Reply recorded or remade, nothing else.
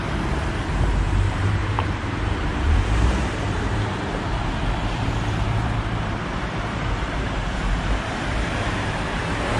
remade